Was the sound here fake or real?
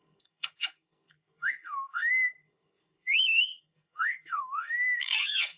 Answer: fake